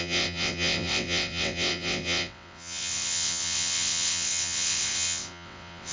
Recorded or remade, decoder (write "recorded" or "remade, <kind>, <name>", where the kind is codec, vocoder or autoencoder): remade, vocoder, WaveNeXt